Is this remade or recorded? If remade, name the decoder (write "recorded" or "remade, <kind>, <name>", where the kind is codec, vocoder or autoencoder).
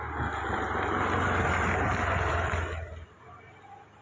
recorded